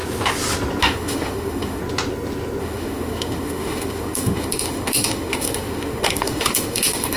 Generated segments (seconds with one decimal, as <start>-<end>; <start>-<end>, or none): 0.8-1.8; 2.6-7.2